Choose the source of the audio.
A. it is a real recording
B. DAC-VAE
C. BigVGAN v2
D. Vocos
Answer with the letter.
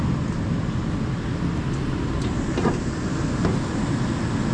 A